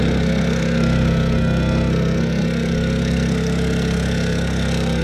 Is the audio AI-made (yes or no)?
yes